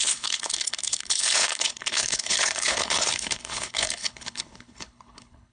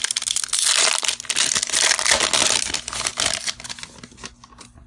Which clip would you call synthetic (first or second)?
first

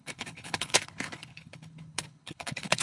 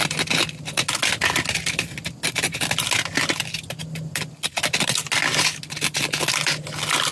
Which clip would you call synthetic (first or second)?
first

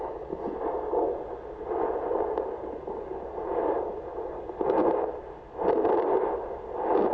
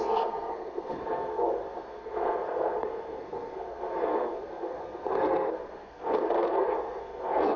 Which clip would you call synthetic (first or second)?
second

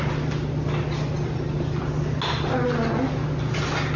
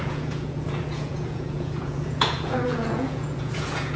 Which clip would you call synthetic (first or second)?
second